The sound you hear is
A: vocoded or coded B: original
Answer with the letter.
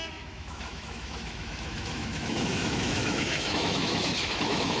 A